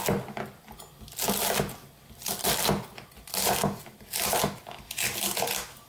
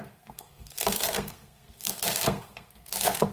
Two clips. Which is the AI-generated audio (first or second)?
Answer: second